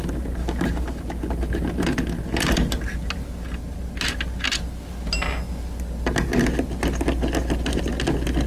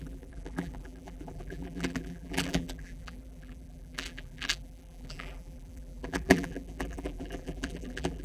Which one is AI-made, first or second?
second